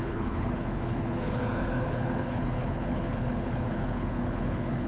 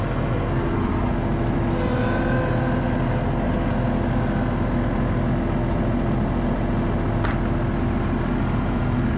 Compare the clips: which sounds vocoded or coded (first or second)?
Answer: first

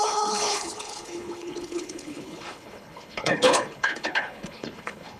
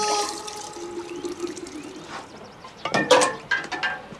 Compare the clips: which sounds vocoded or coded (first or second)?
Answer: first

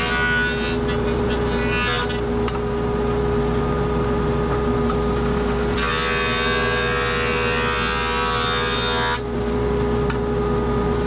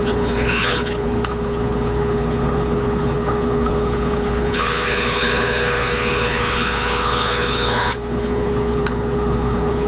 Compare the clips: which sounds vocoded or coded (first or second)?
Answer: second